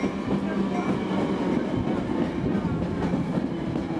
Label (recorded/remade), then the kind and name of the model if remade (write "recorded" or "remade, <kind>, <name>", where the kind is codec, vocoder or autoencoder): recorded